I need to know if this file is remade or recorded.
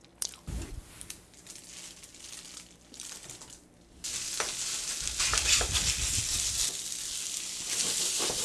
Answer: recorded